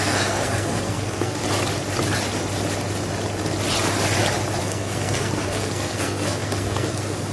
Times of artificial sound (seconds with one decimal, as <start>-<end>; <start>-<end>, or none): 0.0-1.4; 4.6-7.3